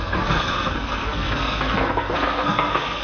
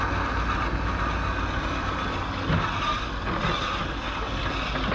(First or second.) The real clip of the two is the second